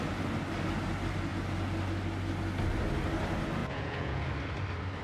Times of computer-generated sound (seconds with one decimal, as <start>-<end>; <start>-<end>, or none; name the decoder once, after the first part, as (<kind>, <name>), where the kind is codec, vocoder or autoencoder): 3.6-4.3 (vocoder, Vocos)